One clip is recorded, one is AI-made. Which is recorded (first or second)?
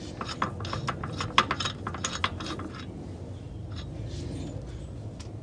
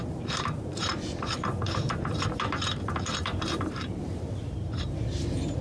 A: first